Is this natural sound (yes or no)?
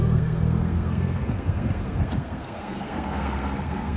no